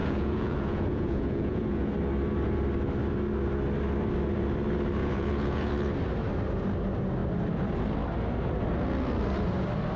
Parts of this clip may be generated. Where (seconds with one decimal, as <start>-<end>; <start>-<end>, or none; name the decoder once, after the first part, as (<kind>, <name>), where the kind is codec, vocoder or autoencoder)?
0.0-1.9 (vocoder, Vocos); 5.0-5.7